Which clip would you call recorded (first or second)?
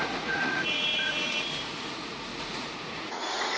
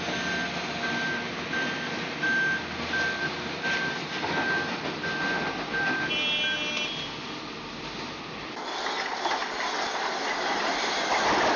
second